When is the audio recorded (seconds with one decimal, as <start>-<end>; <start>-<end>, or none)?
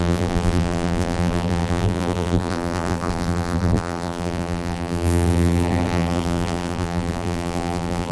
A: none